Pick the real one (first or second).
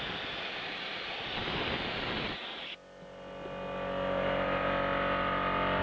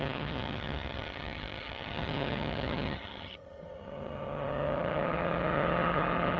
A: first